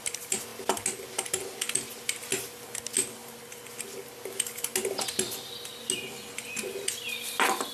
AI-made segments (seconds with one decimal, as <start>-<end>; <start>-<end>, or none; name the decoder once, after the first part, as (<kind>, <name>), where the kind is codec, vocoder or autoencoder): none

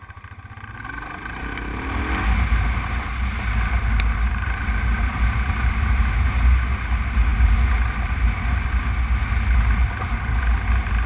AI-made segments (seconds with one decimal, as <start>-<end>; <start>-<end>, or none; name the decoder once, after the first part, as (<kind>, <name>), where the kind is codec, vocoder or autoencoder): none

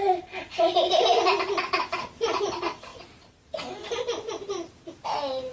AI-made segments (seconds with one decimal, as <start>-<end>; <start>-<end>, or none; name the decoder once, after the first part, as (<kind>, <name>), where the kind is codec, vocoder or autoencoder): 0.0-1.1 (vocoder, BigVGAN v2); 2.4-5.5

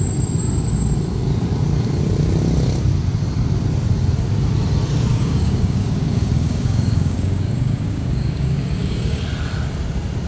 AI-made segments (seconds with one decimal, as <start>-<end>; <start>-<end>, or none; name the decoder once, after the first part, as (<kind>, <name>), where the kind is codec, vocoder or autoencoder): 5.1-9.2 (codec, DAC)

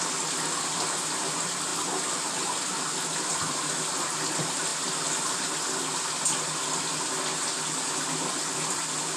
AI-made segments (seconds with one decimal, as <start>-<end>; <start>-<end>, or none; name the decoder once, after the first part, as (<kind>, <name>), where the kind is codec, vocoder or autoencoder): none

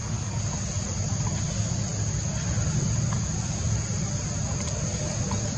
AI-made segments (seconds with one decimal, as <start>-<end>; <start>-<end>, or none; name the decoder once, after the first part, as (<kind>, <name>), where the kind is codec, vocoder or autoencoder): none

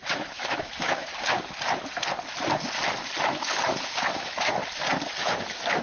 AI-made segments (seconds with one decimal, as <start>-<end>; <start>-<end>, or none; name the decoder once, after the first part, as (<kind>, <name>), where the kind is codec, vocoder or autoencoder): 0.0-1.1 (autoencoder, DAC-VAE); 3.2-4.6; 5.2-5.8